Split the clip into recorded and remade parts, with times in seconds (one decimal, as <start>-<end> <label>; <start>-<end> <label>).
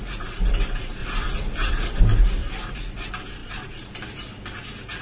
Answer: 0.0-1.0 recorded; 1.0-2.0 remade; 2.0-2.4 recorded; 2.4-2.9 remade; 2.9-3.4 recorded; 3.4-3.9 remade; 3.9-5.0 recorded